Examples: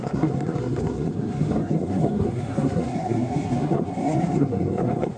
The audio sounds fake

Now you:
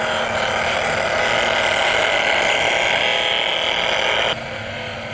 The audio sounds real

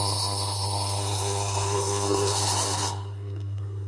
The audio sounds fake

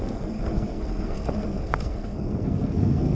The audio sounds fake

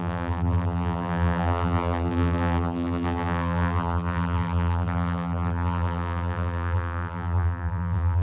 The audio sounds fake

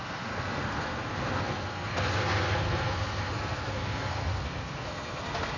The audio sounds fake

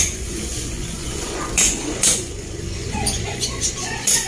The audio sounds fake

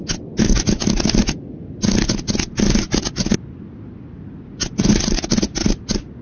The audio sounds real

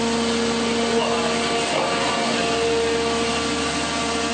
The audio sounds real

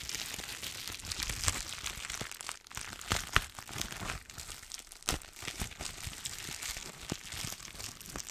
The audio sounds real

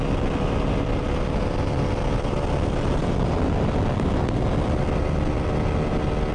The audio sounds real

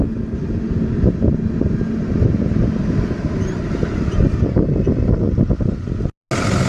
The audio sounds real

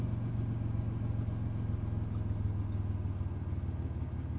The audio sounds real